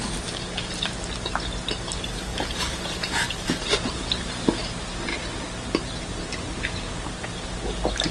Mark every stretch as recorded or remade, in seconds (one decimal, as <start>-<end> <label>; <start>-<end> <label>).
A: 0.0-2.3 recorded; 2.3-4.3 remade; 4.3-8.1 recorded